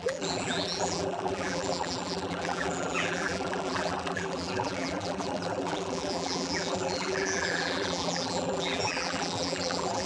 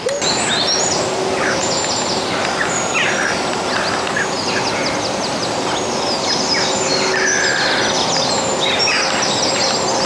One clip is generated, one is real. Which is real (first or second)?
second